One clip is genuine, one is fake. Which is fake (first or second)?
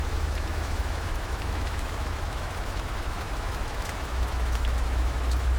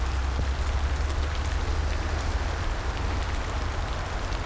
first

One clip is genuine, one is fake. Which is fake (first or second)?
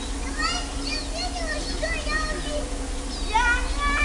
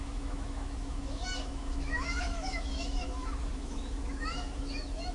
second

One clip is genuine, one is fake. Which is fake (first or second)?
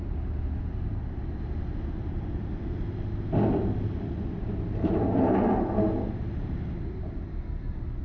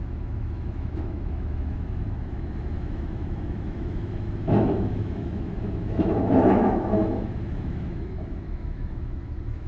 second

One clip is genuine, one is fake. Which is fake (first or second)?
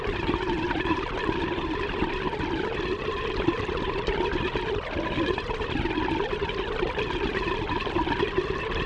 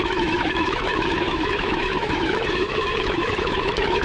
second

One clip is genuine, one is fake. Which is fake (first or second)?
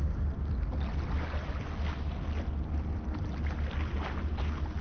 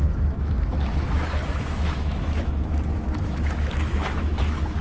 second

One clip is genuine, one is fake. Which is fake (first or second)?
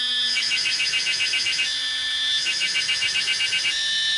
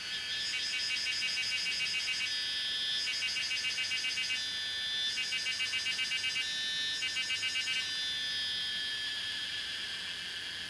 first